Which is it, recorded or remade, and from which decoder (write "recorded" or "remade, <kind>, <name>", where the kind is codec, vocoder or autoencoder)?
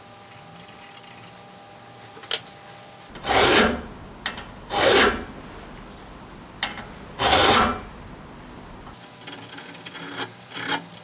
recorded